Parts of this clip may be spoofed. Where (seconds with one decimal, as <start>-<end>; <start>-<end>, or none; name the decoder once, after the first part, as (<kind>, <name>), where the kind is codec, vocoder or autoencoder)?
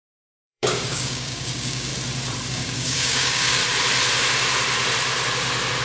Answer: 0.0-1.9 (codec, DAC); 2.5-3.6